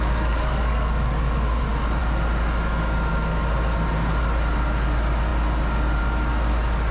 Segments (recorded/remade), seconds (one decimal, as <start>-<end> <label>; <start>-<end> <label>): 0.0-1.6 remade; 1.6-6.9 recorded